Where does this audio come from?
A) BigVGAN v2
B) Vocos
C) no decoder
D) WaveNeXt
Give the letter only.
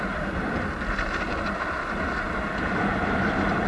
C